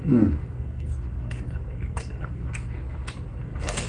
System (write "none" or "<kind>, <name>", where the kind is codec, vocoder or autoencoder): codec, SNAC